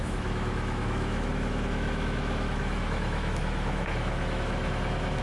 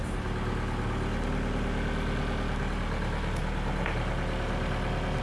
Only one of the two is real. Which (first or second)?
second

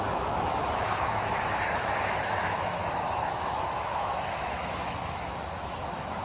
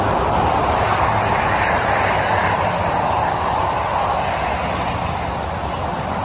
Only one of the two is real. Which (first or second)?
second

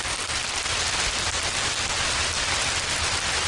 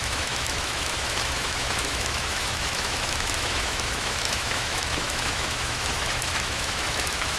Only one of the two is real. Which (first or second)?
first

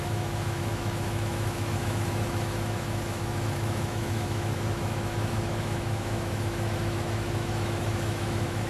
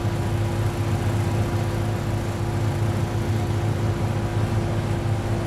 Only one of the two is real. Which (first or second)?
second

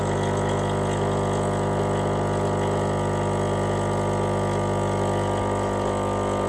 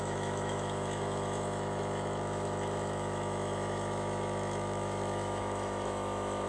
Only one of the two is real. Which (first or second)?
first